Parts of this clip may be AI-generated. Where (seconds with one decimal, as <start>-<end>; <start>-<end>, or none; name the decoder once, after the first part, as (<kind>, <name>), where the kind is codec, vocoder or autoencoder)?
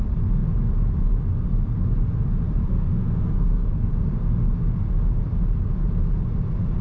2.7-3.9 (codec, SNAC)